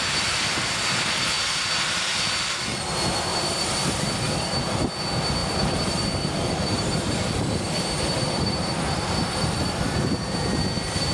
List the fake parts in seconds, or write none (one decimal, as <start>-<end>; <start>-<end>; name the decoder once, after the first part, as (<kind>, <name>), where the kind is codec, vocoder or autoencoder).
3.3-4.0 (vocoder, BigVGAN v2); 5.4-10.0